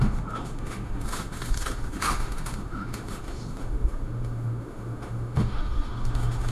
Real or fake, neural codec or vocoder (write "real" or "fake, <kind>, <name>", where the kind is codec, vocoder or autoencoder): fake, autoencoder, DAC-VAE